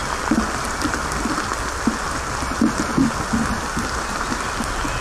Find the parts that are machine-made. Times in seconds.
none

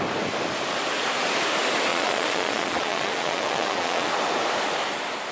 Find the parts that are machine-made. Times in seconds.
1.9-4.1 (vocoder, Vocos)

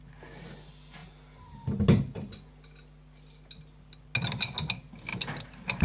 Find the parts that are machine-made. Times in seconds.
none

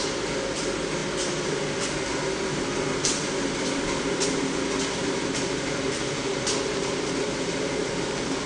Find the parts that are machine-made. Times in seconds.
none

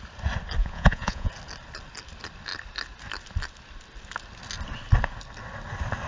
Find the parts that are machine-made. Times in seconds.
0.6-1.3 (vocoder, Vocos)

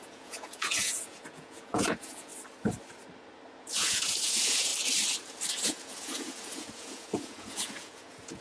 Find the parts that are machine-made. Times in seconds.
0.0-2.3 (vocoder, Vocos); 3.6-4.7; 5.5-8.4

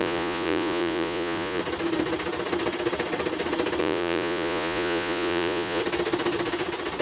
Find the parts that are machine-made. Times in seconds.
0.0-1.6 (vocoder, Vocos); 3.8-5.8